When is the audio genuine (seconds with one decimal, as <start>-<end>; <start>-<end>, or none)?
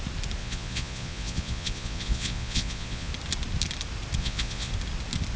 0.0-0.4; 3.1-4.2; 4.7-5.4